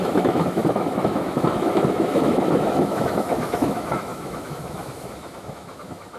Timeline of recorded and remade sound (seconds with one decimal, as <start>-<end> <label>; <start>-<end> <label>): 0.0-6.2 remade